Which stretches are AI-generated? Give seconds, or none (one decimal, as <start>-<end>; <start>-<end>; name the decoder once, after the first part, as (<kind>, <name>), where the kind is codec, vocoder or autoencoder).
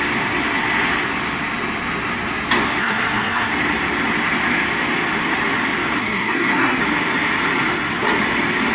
2.8-3.5 (codec, SNAC); 6.0-6.8